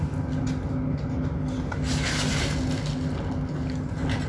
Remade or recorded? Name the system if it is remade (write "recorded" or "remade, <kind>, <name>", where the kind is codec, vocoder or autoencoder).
recorded